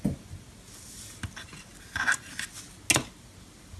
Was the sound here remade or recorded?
recorded